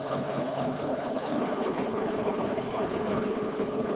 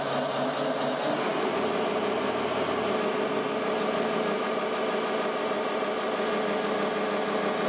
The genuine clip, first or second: second